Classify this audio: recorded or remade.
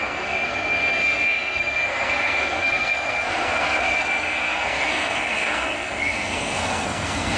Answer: remade